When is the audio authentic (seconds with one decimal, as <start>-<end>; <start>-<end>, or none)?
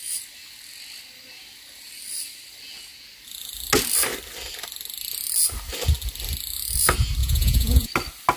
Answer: 0.0-7.2; 7.9-8.4